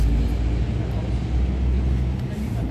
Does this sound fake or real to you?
real